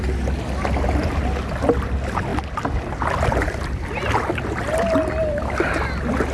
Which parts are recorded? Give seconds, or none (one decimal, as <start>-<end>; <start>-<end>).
0.0-6.3